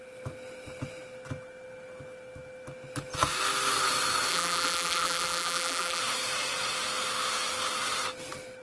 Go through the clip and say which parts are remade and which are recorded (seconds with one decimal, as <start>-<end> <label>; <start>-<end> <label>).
0.0-4.3 recorded; 4.3-6.0 remade; 6.0-8.6 recorded